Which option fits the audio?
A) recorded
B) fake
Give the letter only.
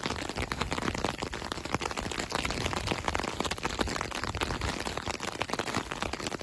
A